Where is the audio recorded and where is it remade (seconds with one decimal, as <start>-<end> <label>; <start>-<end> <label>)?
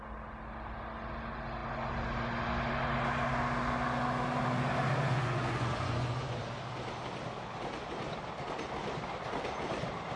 0.0-5.1 recorded; 5.1-6.4 remade; 6.4-10.2 recorded